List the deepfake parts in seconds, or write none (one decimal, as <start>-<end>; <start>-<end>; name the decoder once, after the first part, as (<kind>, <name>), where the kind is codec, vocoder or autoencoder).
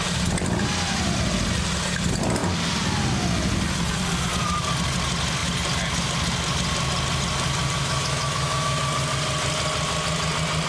7.8-8.8 (autoencoder, DAC-VAE)